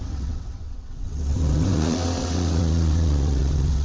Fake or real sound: fake